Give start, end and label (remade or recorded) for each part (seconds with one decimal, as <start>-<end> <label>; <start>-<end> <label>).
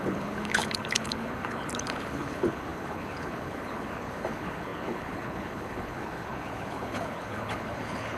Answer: 0.0-8.2 remade